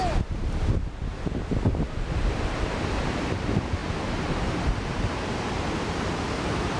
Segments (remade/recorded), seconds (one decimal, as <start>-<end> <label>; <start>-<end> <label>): 0.0-1.1 remade; 1.1-3.0 recorded; 3.0-6.8 remade